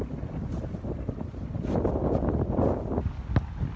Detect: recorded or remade recorded